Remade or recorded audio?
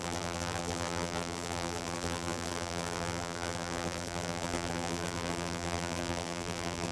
remade